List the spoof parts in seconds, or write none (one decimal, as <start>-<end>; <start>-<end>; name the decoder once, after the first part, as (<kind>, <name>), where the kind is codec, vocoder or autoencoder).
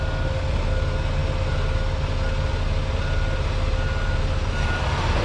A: none